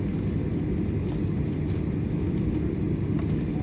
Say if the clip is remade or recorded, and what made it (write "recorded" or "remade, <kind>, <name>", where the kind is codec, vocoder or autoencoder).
recorded